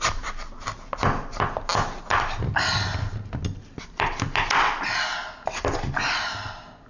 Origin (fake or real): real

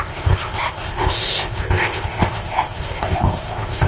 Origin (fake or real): fake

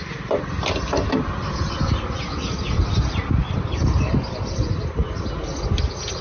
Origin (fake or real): real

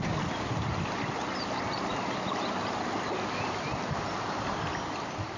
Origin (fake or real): real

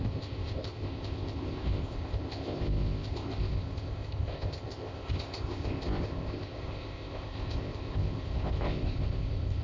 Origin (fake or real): fake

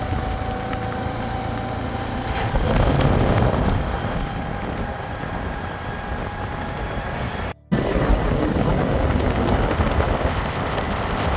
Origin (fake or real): real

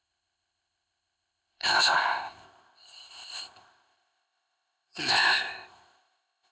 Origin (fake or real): fake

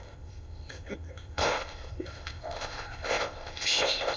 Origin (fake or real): fake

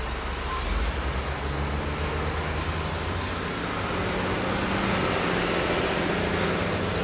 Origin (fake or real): real